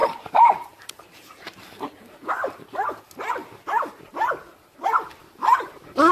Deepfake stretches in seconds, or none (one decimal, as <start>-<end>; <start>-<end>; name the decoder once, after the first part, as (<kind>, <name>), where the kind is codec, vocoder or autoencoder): 0.0-3.0 (vocoder, BigVGAN v2)